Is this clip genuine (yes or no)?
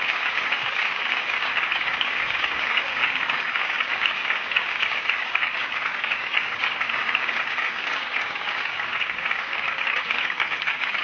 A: no